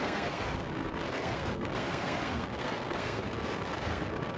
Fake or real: fake